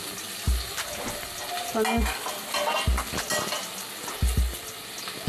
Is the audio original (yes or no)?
yes